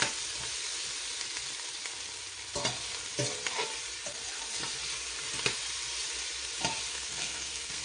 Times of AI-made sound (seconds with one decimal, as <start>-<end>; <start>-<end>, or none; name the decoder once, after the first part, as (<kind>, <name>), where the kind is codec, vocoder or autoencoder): 6.9-7.8 (codec, SNAC)